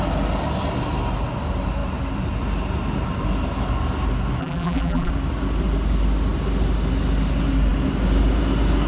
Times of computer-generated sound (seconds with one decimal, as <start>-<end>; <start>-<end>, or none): 4.4-5.1